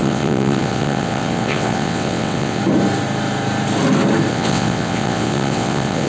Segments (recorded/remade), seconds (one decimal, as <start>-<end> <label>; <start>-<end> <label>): 0.0-2.6 remade; 2.6-4.3 recorded; 4.3-6.1 remade